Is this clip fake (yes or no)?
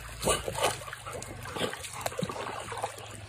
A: no